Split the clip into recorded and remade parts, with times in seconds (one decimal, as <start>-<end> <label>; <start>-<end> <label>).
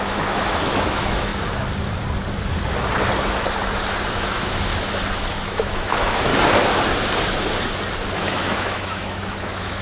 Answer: 0.0-1.3 remade; 1.3-4.1 recorded; 4.1-4.7 remade; 4.7-5.3 recorded; 5.3-6.3 remade; 6.3-8.2 recorded; 8.2-9.8 remade